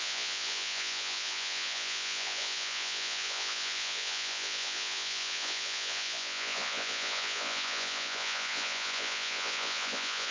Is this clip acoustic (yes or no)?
no